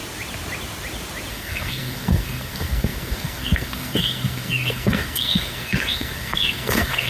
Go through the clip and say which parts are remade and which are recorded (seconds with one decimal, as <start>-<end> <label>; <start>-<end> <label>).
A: 0.0-1.3 recorded; 1.3-7.1 remade